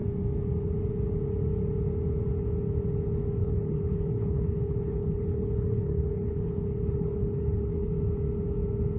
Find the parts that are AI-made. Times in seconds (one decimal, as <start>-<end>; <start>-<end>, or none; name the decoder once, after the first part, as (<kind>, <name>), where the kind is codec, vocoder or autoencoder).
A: 3.4-7.9 (codec, HILCodec)